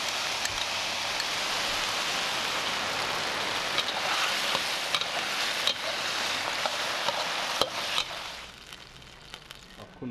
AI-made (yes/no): no